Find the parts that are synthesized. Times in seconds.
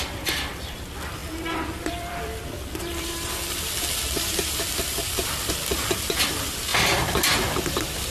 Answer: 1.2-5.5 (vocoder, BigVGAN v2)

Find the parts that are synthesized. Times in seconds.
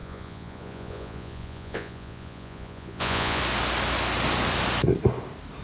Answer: 0.0-3.4 (vocoder, Vocos)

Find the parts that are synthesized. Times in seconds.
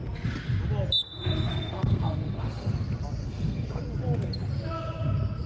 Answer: 1.5-2.7 (codec, SNAC); 3.2-3.8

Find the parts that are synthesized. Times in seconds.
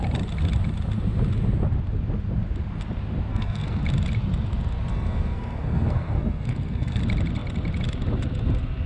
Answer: 3.3-3.8 (codec, SNAC); 4.9-7.0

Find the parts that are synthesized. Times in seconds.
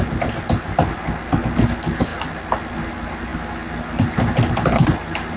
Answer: none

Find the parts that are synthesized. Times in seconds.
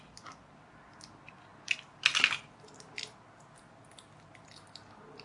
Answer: none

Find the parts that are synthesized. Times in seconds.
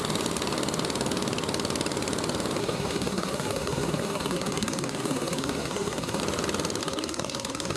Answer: 2.6-6.2 (codec, SNAC); 6.8-7.8